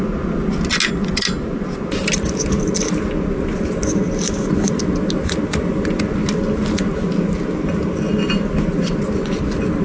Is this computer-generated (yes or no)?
no